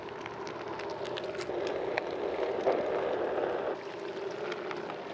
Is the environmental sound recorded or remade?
recorded